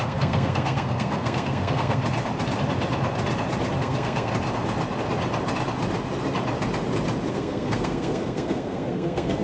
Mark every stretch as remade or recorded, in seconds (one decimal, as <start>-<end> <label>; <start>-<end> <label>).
0.0-2.0 remade; 2.0-3.8 recorded; 3.8-4.3 remade; 4.3-7.3 recorded; 7.3-9.4 remade